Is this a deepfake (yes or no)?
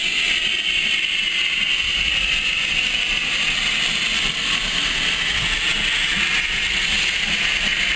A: no